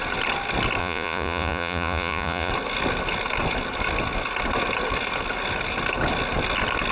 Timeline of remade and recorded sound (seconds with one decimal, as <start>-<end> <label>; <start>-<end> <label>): 0.0-0.8 recorded; 0.8-2.5 remade; 2.5-6.9 recorded